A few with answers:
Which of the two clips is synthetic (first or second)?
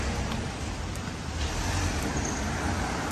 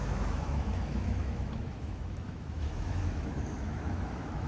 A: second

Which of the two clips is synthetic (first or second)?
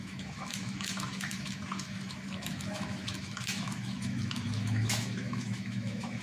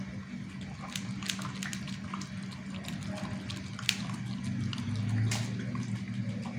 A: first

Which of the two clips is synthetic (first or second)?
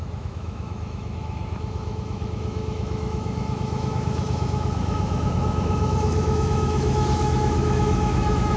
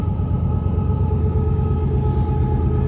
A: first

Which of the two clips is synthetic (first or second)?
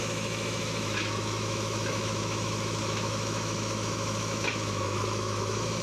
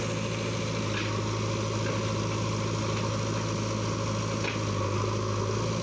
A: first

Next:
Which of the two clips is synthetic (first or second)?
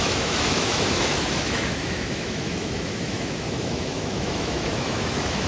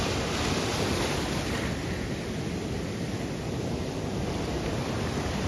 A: first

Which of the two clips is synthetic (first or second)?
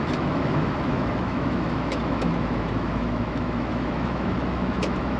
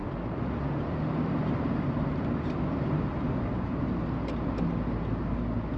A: first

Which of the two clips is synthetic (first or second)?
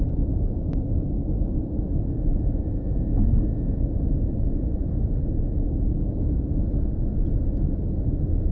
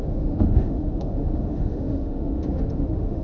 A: second